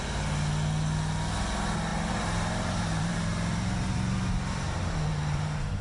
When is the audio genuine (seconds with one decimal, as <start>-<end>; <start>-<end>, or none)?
0.0-1.9